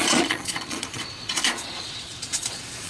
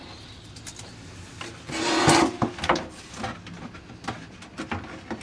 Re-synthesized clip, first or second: first